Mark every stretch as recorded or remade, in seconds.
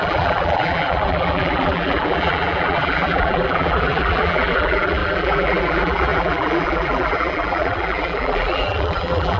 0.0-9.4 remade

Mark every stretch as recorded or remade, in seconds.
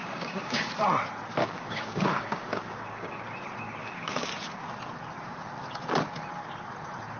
0.0-0.7 remade; 0.7-1.4 recorded; 1.4-3.2 remade; 3.2-3.8 recorded; 3.8-4.3 remade; 4.3-7.2 recorded